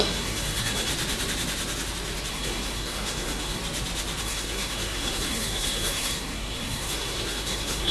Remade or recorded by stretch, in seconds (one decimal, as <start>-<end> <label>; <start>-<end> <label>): 0.0-0.9 remade; 0.9-2.3 recorded; 2.3-3.6 remade; 3.6-4.2 recorded; 4.2-7.9 remade